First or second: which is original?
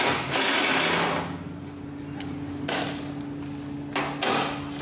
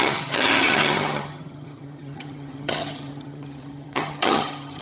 first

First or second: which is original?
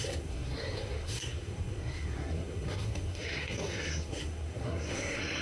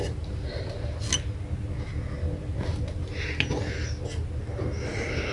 second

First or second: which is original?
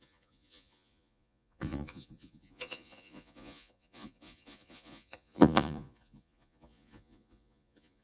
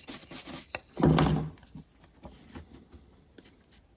second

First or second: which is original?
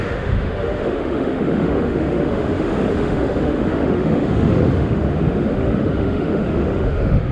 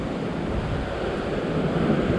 second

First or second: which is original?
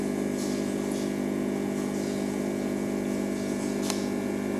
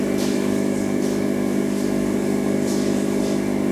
first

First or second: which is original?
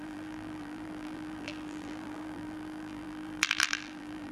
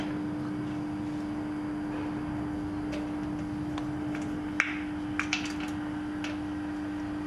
second